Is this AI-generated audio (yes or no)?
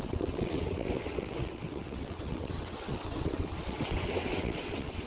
yes